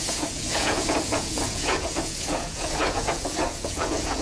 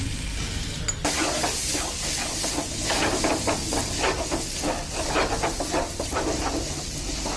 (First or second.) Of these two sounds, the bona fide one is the second